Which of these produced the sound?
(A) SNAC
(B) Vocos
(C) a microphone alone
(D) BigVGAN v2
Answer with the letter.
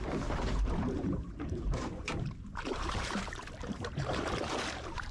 D